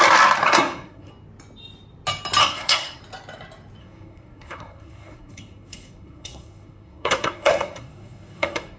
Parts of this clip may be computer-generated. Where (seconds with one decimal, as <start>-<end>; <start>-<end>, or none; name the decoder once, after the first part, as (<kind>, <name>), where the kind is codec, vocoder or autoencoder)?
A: 0.4-1.1 (codec, SNAC); 2.4-3.0; 3.8-8.8